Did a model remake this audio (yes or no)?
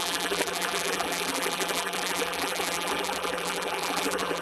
yes